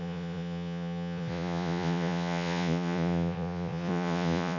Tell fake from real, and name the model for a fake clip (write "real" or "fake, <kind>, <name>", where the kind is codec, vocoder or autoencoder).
fake, vocoder, Vocos